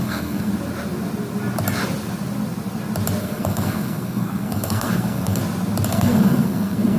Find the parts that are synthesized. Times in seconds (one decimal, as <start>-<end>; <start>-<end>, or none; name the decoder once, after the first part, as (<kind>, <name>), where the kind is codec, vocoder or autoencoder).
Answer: 0.0-0.5 (codec, SNAC); 3.2-5.4; 5.9-7.0